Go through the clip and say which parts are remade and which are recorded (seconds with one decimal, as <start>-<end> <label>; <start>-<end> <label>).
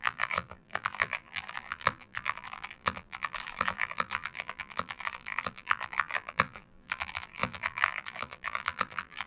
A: 0.0-9.3 remade